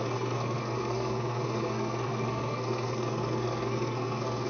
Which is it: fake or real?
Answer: fake